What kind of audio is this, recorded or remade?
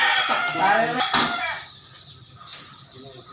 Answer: recorded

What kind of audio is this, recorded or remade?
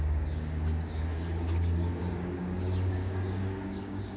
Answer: remade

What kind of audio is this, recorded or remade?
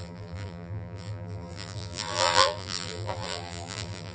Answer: remade